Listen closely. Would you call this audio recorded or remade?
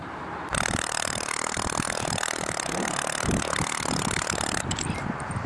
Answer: remade